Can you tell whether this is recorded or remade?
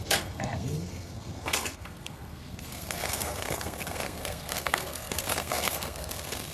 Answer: remade